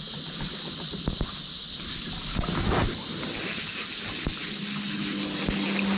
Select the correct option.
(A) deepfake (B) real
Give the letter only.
B